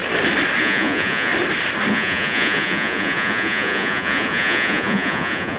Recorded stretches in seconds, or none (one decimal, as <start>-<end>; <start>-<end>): 0.0-0.6; 1.3-1.9